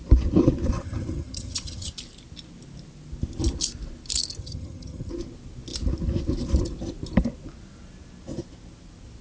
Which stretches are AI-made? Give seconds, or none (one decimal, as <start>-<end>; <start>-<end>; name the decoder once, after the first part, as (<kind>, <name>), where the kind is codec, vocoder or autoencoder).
0.7-1.9 (vocoder, HiFi-GAN); 4.4-5.1